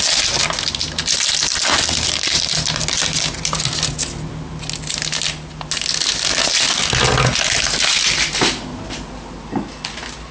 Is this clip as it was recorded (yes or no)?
yes